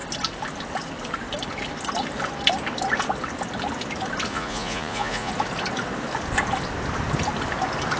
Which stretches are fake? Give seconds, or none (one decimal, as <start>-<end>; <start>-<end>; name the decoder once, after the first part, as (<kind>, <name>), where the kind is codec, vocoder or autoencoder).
4.3-5.3 (vocoder, Vocos)